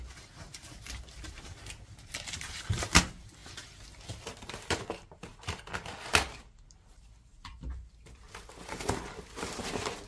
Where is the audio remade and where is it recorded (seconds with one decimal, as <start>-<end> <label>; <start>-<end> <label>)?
0.0-3.4 recorded; 3.4-4.8 remade; 4.8-5.3 recorded; 5.3-6.1 remade; 6.1-10.1 recorded